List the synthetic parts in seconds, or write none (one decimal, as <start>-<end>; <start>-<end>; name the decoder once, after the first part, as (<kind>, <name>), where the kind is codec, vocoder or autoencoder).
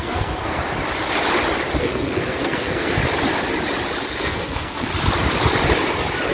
0.0-0.6 (codec, SNAC); 1.8-3.0; 4.1-4.9